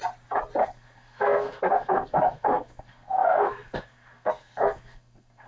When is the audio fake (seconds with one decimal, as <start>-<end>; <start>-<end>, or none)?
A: 0.6-5.5